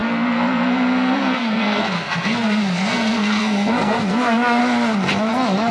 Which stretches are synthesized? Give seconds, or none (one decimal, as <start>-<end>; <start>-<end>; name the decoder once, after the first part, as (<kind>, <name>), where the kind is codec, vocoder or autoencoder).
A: 0.0-4.6 (codec, SNAC); 5.3-5.7